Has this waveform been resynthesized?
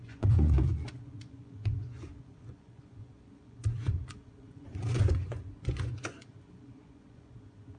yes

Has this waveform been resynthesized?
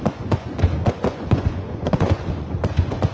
yes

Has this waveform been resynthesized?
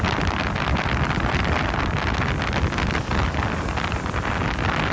no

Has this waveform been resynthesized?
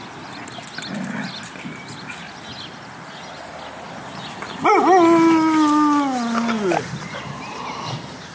no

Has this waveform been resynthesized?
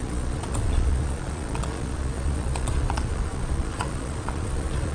yes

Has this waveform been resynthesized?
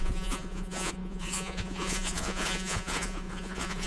yes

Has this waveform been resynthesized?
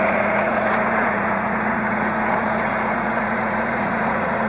yes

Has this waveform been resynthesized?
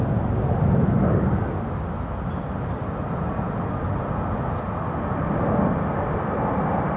no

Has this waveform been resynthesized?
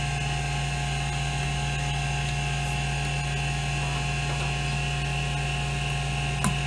no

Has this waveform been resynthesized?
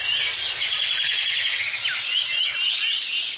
no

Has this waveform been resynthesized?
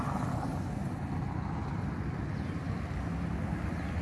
no